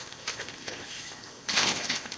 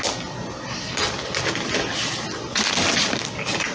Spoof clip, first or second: first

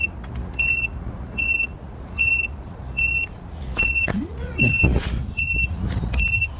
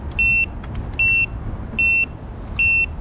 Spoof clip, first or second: first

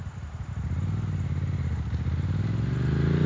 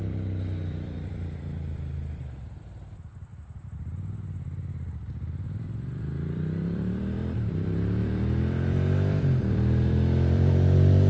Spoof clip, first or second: second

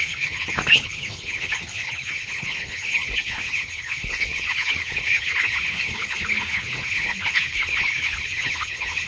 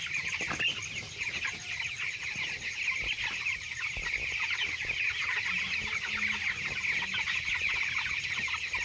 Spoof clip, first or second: first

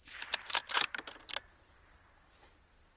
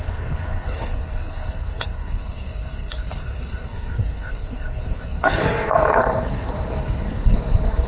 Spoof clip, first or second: second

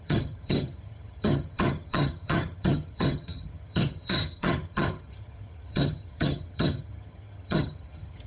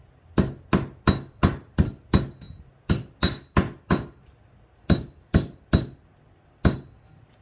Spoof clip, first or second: first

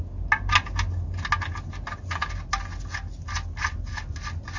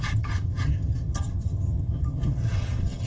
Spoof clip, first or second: second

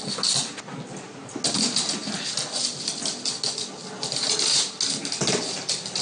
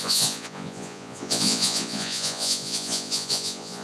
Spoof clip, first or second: second